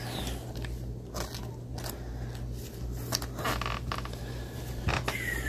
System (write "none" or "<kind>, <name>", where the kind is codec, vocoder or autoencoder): none